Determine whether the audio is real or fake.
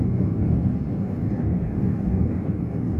fake